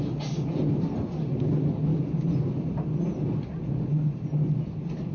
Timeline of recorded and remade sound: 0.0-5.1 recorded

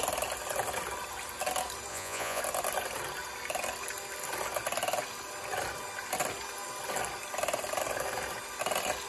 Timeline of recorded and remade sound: 0.0-1.9 recorded; 1.9-2.4 remade; 2.4-9.1 recorded

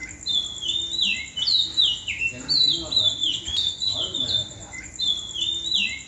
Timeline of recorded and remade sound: 0.0-3.2 recorded; 3.2-4.9 remade; 4.9-6.1 recorded

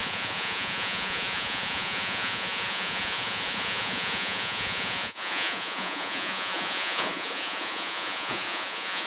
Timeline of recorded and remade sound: 0.0-9.1 remade

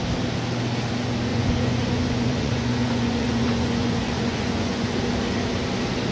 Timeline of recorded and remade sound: 0.0-1.3 recorded; 1.3-5.0 remade; 5.0-6.1 recorded

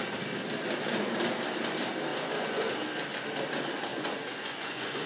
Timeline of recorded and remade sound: 0.0-2.1 recorded; 2.1-2.7 remade; 2.7-3.9 recorded; 3.9-5.1 remade